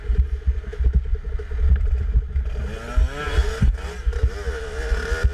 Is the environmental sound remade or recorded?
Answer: recorded